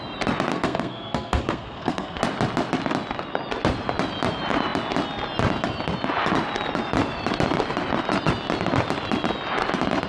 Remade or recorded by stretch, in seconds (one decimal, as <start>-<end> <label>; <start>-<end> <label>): 0.0-0.5 recorded; 0.5-2.2 remade; 2.2-10.1 recorded

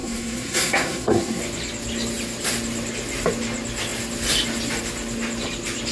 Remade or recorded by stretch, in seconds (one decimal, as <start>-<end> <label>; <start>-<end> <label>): 0.0-1.4 remade; 1.4-5.9 recorded

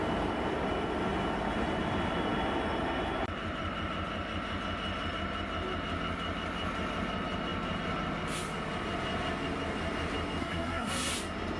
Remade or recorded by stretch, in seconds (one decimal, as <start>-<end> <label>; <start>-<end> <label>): 0.0-10.4 recorded; 10.4-11.1 remade; 11.1-11.6 recorded